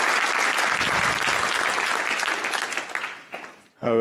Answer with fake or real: real